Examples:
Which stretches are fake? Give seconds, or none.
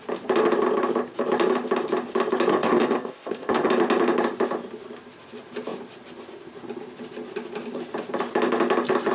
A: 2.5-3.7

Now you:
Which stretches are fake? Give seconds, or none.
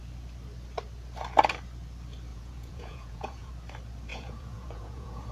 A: 2.3-3.5; 4.1-5.3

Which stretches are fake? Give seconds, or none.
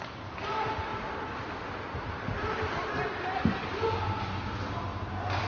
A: none